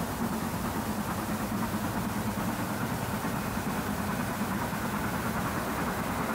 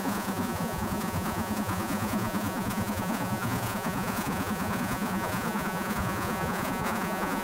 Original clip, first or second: first